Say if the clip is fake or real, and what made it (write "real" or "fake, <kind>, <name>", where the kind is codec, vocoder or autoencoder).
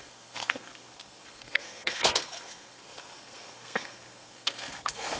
fake, codec, SNAC